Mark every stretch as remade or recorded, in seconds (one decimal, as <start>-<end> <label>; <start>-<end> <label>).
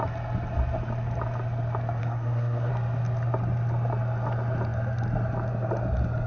0.0-2.0 recorded; 2.0-2.7 remade; 2.7-6.3 recorded